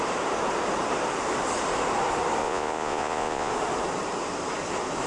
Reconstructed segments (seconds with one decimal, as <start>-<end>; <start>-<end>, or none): 2.4-3.5